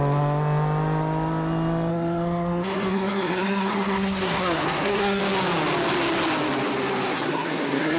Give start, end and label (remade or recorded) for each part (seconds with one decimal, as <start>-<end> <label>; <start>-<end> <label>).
0.0-1.9 recorded; 1.9-5.2 remade; 5.2-7.1 recorded; 7.1-8.0 remade